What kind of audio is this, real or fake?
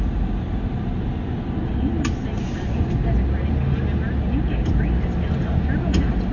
real